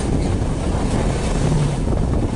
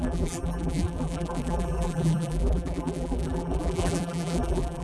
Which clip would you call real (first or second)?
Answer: first